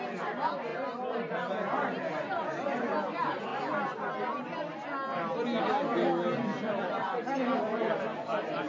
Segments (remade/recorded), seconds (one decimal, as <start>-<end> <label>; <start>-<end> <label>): 0.0-8.7 recorded